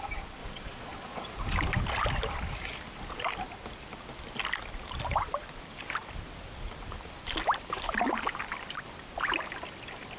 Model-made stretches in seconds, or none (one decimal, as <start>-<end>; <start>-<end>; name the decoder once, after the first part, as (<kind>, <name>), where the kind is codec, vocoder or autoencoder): 0.4-1.4 (vocoder, Vocos)